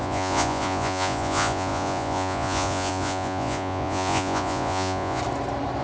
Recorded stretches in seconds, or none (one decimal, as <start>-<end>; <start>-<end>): 5.2-5.8